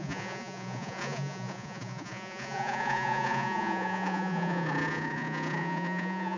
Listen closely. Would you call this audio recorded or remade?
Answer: remade